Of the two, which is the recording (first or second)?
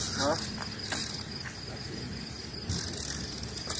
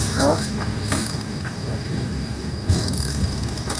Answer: first